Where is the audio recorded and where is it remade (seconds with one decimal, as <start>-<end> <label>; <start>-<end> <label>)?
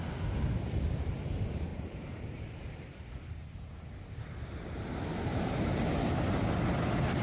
0.0-1.7 recorded; 1.7-3.7 remade; 3.7-5.1 recorded; 5.1-5.9 remade; 5.9-7.2 recorded